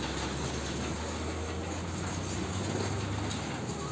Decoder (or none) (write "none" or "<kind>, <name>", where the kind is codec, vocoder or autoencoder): none